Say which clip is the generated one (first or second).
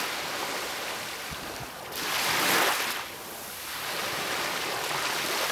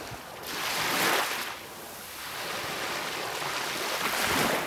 first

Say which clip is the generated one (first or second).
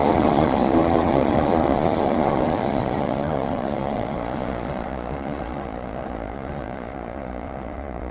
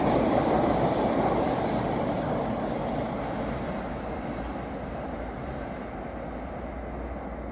first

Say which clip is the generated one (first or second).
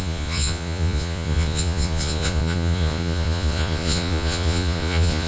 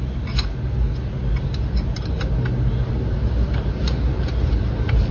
first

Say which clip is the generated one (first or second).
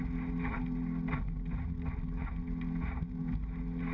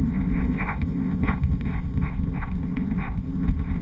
second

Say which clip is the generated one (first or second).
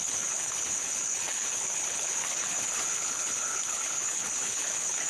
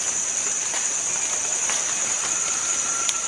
first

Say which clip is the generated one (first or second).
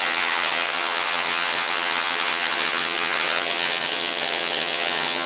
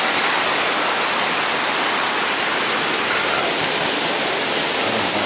first